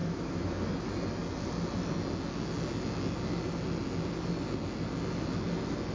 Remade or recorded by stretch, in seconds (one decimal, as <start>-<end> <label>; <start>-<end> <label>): 0.0-0.5 remade; 0.5-5.9 recorded